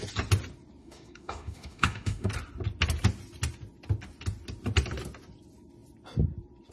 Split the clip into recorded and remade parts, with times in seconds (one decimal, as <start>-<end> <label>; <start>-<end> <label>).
0.0-0.8 recorded; 0.8-2.3 remade; 2.3-6.7 recorded